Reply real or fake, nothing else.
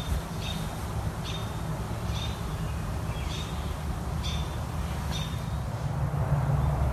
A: real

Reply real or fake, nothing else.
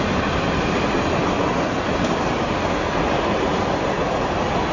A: real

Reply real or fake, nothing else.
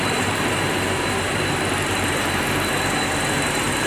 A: fake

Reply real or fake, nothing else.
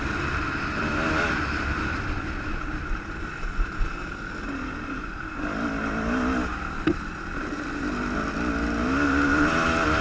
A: real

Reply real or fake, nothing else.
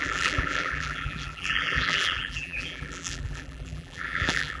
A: fake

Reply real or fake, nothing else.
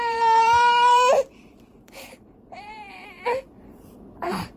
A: fake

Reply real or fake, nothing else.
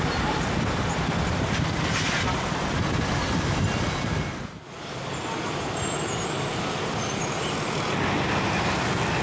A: real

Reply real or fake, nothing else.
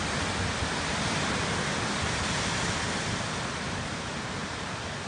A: real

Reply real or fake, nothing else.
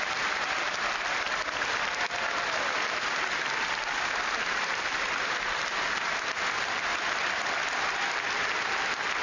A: real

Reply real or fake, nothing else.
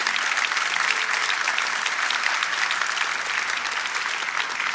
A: real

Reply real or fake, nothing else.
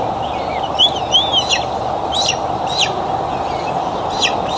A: real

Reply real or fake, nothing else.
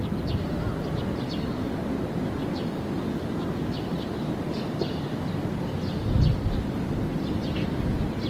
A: real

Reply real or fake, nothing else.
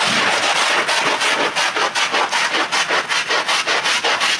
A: real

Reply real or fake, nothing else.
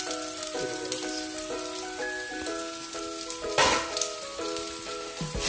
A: real